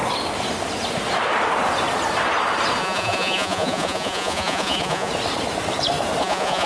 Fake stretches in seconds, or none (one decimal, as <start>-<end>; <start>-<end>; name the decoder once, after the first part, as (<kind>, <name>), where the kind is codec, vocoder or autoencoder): 2.8-5.1 (vocoder, Vocos); 6.2-6.7